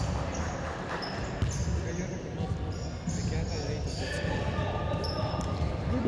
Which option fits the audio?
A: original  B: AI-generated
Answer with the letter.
A